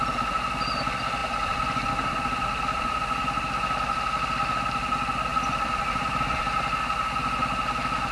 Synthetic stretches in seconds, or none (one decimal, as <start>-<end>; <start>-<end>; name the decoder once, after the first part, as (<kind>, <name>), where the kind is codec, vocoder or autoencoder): 5.3-6.2 (vocoder, BigVGAN v2)